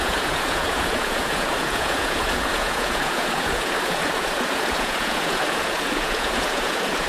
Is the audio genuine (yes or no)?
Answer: no